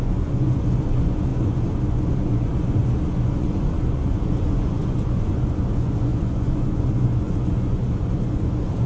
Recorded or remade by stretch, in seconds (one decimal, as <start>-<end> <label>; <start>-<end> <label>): 0.0-8.9 remade